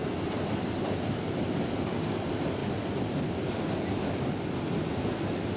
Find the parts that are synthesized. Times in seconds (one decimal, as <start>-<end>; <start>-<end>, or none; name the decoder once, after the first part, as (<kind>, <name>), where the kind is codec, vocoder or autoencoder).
none